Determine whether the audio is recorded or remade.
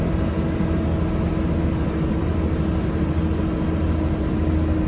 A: recorded